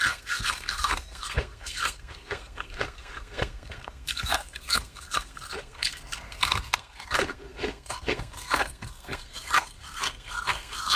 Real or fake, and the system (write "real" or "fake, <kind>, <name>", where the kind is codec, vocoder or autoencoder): fake, codec, SNAC